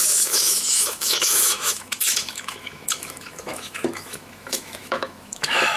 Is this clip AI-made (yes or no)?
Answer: yes